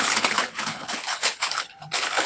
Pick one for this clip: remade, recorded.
remade